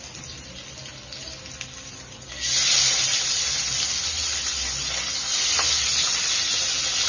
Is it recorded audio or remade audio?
recorded